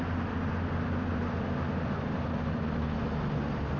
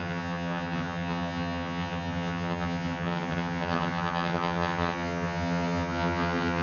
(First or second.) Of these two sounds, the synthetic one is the second